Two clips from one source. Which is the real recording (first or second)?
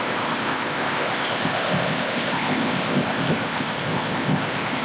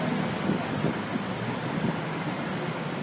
second